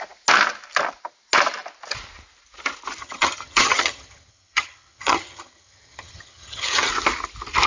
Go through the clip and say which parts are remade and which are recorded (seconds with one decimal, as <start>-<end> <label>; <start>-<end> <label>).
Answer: 0.0-3.0 recorded; 3.0-6.9 remade; 6.9-7.7 recorded